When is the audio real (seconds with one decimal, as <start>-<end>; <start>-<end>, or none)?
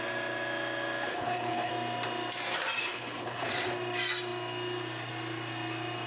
0.0-1.1; 1.7-2.8; 3.5-6.1